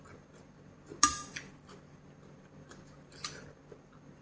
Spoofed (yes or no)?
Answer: no